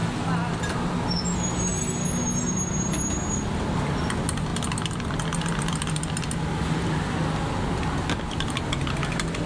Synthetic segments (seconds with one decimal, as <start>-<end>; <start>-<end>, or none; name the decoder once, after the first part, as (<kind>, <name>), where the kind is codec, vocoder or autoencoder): none